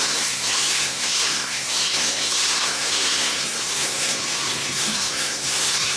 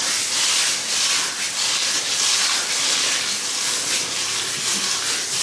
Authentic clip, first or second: second